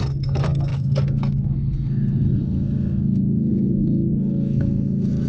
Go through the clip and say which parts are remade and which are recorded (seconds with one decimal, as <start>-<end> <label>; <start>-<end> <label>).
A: 0.0-5.3 remade